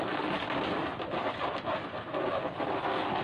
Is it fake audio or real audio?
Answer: real